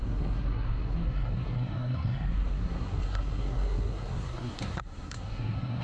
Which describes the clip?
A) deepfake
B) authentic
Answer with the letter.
A